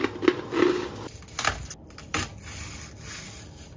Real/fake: real